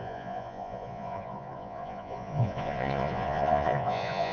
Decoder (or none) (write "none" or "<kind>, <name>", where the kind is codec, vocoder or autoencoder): vocoder, Vocos